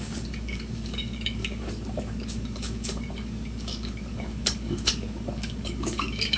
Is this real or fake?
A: fake